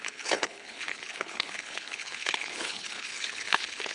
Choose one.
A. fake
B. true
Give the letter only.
A